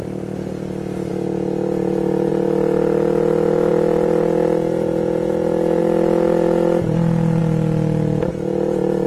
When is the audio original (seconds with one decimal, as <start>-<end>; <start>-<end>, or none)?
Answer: 0.0-9.1